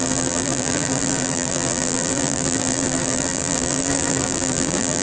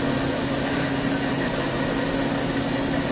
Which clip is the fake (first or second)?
first